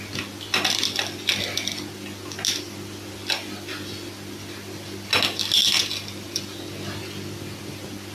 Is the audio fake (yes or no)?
no